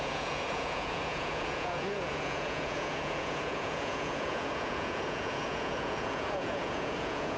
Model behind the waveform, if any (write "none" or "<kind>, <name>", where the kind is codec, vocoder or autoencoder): vocoder, Vocos